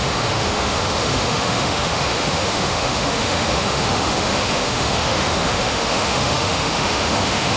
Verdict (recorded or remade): remade